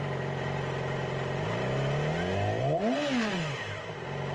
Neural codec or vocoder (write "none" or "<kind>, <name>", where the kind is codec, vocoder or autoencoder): none